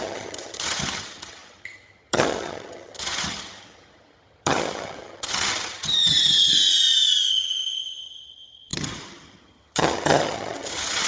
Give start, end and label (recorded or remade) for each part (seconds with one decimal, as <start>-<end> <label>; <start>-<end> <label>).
0.0-6.5 remade; 6.5-7.3 recorded; 7.3-11.1 remade